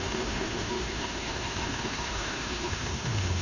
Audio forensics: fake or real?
fake